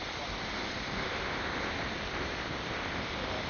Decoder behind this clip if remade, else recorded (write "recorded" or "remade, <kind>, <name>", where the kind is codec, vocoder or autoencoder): recorded